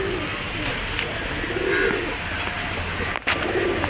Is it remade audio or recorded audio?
recorded